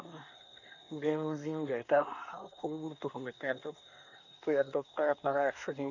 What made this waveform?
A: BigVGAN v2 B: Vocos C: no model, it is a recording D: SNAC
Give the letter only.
D